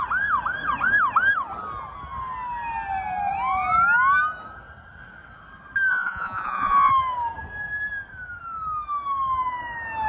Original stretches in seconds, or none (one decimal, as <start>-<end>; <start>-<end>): 0.0-5.9; 6.9-10.1